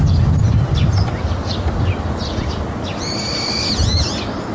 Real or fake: real